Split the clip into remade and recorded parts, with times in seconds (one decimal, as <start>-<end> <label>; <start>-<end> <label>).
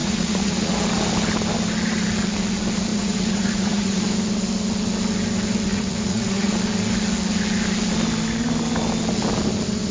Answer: 0.0-0.7 remade; 0.7-2.9 recorded; 2.9-4.0 remade; 4.0-5.7 recorded; 5.7-6.6 remade; 6.6-9.9 recorded